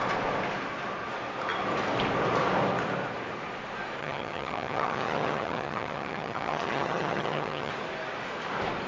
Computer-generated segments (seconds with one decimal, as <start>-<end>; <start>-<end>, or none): 4.0-7.7